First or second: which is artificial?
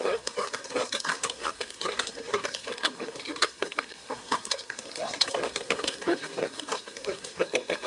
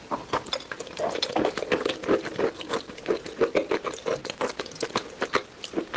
first